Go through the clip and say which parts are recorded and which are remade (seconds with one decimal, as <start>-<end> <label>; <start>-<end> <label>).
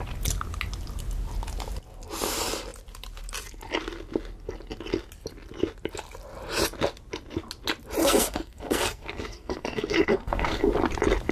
0.0-8.0 recorded; 8.0-10.7 remade; 10.7-11.3 recorded